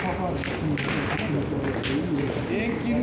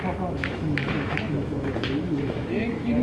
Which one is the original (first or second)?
first